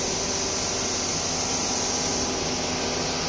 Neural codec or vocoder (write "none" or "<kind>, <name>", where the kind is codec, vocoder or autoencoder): none